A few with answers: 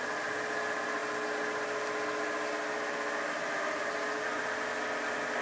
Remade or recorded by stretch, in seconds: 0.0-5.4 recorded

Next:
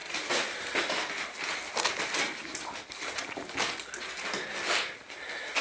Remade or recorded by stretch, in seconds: 0.0-5.6 recorded

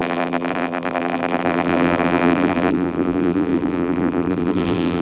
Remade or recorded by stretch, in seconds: 0.0-5.0 remade

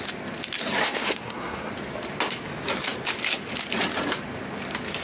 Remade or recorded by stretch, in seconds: 0.0-0.8 recorded; 0.8-1.7 remade; 1.7-5.0 recorded

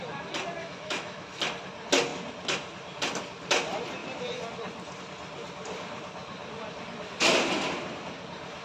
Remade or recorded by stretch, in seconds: 0.0-0.6 recorded; 0.6-1.4 remade; 1.4-8.6 recorded

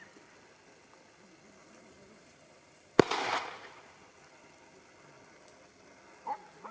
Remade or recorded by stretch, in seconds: 0.0-1.6 recorded; 1.6-3.7 remade; 3.7-6.7 recorded